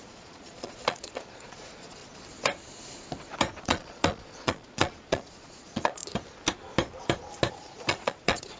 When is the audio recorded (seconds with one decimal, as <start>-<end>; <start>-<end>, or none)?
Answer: 2.0-3.6; 6.0-7.5